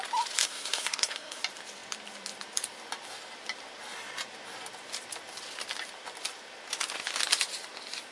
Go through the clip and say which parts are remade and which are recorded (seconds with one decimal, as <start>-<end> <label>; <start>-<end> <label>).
0.0-0.4 recorded; 0.4-1.4 remade; 1.4-8.1 recorded